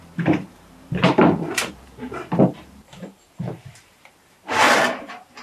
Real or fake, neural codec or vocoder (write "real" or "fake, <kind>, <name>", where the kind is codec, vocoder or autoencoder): fake, vocoder, BigVGAN v2